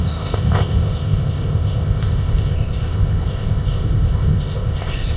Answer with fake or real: fake